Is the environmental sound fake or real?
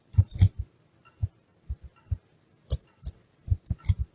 real